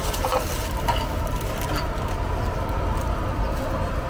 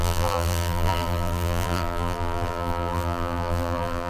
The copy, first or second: second